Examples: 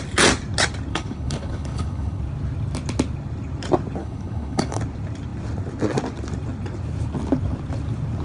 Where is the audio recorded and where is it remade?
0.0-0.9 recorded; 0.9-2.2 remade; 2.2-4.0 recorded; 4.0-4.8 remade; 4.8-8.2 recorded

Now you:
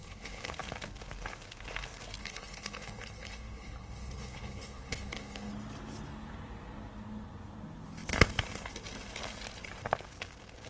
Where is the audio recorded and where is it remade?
0.0-0.5 remade; 0.5-2.2 recorded; 2.2-5.5 remade; 5.5-10.7 recorded

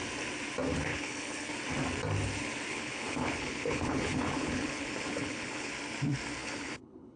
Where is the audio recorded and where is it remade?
0.0-0.9 recorded; 0.9-1.5 remade; 1.5-2.7 recorded; 2.7-5.7 remade; 5.7-6.4 recorded; 6.4-7.2 remade